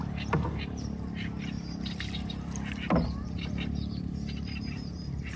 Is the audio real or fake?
real